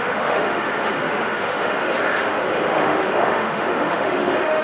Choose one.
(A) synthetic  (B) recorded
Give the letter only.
A